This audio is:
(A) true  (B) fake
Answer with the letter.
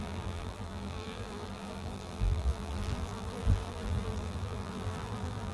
B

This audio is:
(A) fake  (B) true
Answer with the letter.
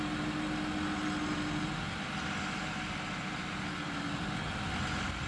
B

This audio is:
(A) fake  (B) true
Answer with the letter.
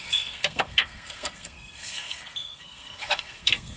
A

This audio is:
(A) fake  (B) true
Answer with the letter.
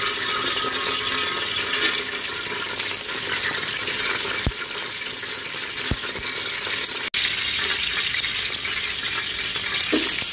B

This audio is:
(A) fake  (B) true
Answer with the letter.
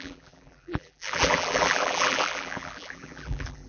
A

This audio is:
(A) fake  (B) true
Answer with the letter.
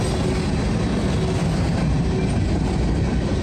B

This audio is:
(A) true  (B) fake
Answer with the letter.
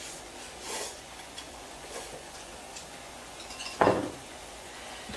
B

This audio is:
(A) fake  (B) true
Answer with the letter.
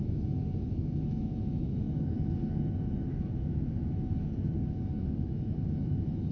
A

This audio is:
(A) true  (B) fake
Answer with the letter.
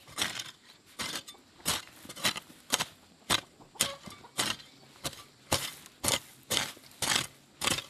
A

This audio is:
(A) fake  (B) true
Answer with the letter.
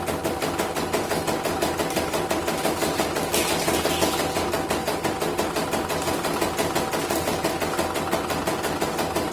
B